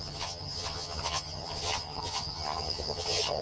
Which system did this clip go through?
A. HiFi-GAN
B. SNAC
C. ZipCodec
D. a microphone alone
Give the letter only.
A